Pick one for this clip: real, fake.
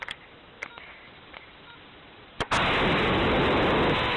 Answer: real